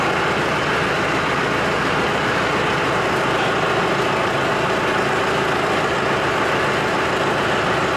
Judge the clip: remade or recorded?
recorded